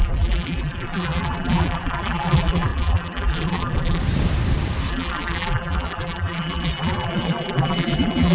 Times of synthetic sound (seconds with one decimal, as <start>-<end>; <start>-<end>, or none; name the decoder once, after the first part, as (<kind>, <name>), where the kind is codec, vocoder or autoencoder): 0.0-4.0 (vocoder, BigVGAN v2); 4.9-8.3